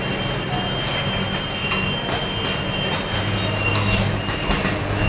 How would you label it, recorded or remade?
recorded